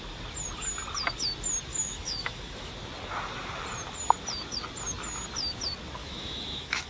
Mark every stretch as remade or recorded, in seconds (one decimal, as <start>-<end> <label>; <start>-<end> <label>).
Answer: 0.0-1.7 recorded; 1.7-2.7 remade; 2.7-6.0 recorded; 6.0-6.9 remade